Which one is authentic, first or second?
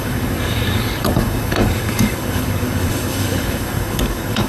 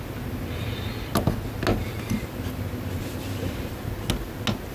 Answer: second